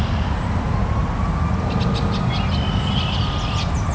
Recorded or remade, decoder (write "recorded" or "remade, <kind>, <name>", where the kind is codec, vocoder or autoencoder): recorded